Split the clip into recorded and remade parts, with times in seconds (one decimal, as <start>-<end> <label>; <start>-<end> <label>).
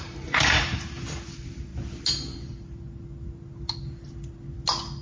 0.0-1.7 remade; 1.7-5.0 recorded